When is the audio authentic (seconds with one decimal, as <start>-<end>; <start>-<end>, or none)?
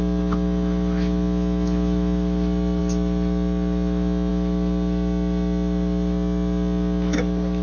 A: none